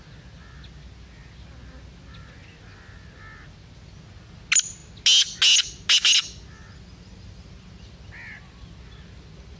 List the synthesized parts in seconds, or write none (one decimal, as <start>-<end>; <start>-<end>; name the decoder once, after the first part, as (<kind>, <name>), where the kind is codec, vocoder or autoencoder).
none